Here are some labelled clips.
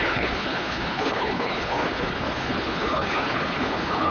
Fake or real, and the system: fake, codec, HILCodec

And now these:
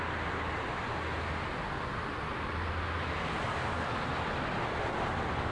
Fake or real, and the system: real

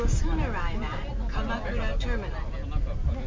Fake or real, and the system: real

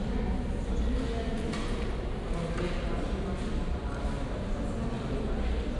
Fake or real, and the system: real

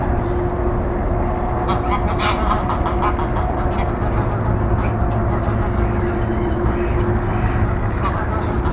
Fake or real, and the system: real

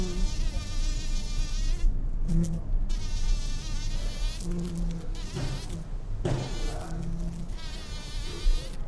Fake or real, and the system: real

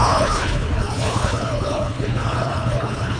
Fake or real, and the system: fake, codec, HILCodec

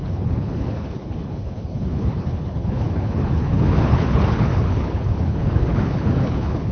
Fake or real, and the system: fake, codec, HILCodec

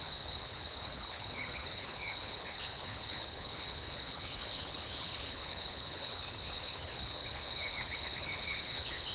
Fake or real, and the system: fake, codec, HILCodec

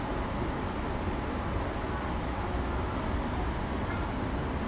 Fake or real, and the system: real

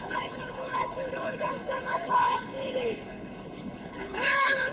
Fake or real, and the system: fake, codec, HILCodec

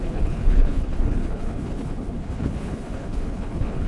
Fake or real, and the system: fake, codec, HILCodec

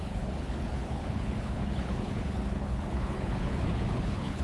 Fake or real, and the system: fake, codec, HILCodec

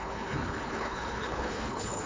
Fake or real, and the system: fake, codec, HILCodec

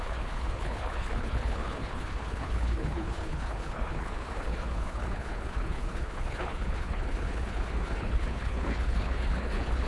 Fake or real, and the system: fake, codec, HILCodec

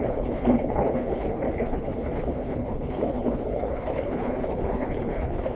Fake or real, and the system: fake, codec, HILCodec